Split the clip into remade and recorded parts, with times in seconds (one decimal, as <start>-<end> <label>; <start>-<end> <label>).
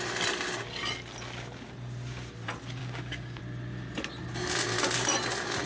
0.0-2.8 recorded; 2.8-3.4 remade; 3.4-5.7 recorded